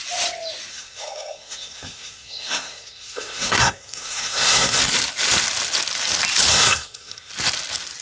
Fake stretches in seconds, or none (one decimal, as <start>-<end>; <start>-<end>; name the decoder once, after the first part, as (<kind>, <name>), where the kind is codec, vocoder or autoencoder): 0.7-4.8 (codec, SNAC); 6.5-7.3